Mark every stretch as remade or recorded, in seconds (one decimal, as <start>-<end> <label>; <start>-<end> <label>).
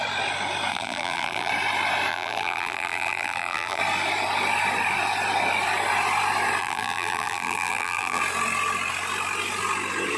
0.0-0.7 recorded; 0.7-1.5 remade; 1.5-2.1 recorded; 2.1-3.8 remade; 3.8-6.6 recorded; 6.6-8.2 remade; 8.2-10.2 recorded